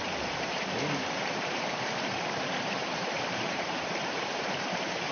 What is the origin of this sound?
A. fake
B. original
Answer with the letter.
A